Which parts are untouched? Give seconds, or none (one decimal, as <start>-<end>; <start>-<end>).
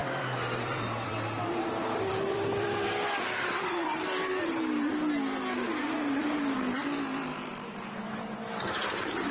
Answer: 4.5-7.3; 8.0-9.3